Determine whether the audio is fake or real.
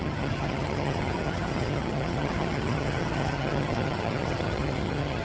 fake